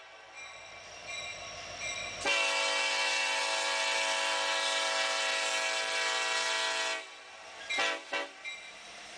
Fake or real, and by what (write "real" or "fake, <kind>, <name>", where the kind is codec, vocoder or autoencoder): real